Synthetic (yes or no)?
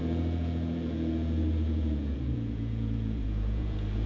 yes